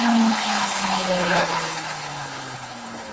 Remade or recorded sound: remade